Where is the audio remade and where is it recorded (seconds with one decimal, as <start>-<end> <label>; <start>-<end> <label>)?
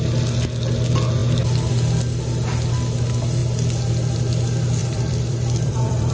0.0-4.8 recorded; 4.8-6.1 remade